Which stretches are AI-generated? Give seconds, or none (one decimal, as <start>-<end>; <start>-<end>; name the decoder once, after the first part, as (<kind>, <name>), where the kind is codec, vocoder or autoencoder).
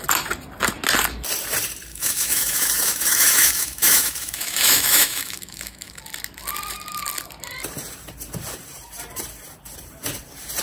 1.9-6.0 (autoencoder, DAC-VAE)